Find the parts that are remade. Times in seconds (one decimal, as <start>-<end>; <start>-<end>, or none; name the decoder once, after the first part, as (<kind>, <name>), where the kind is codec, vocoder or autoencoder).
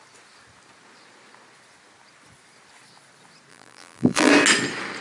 3.5-4.3 (vocoder, BigVGAN v2)